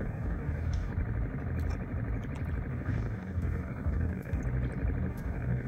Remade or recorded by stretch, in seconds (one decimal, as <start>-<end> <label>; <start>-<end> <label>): 0.0-0.9 remade; 0.9-2.7 recorded; 2.7-4.4 remade; 4.4-5.1 recorded; 5.1-5.7 remade